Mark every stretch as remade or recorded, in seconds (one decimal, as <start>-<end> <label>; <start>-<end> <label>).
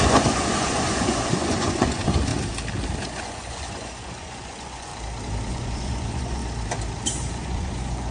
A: 0.0-2.3 remade; 2.3-3.0 recorded; 3.0-4.9 remade; 4.9-5.5 recorded; 5.5-6.4 remade; 6.4-7.3 recorded; 7.3-8.1 remade